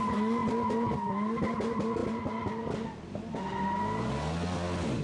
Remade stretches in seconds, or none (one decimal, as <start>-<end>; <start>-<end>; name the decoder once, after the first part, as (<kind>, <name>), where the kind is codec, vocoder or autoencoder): none